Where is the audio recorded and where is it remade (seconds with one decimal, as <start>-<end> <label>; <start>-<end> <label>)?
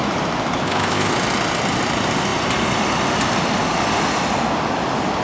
0.0-0.6 recorded; 0.6-1.1 remade; 1.1-5.2 recorded